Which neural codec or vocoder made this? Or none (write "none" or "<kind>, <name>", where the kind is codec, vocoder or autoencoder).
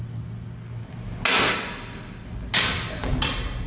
none